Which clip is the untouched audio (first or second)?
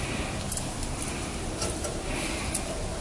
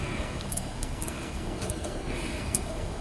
first